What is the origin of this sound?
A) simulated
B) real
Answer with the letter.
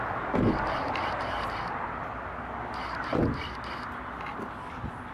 B